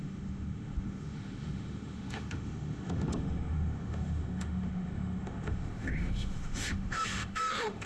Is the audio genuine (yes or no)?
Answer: no